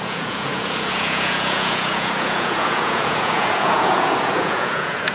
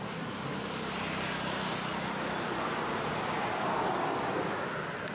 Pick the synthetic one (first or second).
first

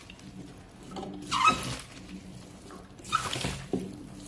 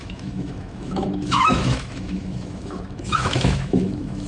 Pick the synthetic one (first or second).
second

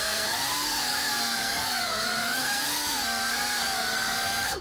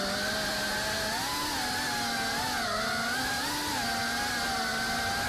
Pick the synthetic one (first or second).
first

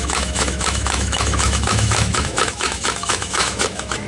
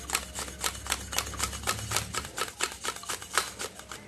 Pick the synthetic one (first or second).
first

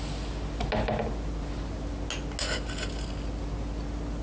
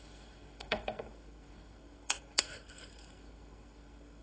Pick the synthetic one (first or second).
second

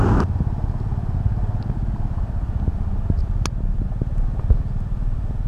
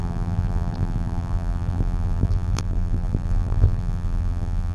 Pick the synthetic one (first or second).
second